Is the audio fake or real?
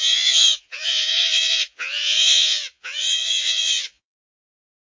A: fake